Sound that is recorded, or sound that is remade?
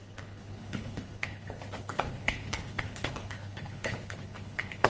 remade